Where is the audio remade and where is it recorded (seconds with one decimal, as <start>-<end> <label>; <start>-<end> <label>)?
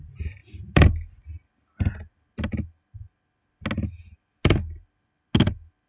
0.0-5.9 recorded